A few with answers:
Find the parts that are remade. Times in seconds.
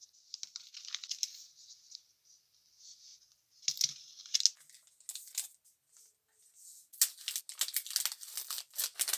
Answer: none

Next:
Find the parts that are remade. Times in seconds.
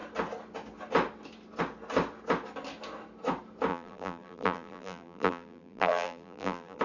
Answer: 3.7-6.8 (vocoder, BigVGAN v2)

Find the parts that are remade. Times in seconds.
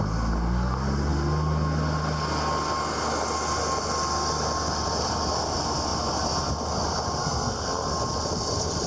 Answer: 7.2-7.9 (codec, SNAC)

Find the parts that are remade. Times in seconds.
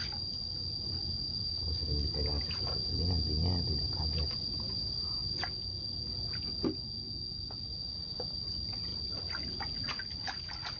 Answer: none